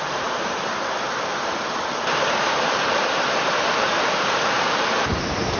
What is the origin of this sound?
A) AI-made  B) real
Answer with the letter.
A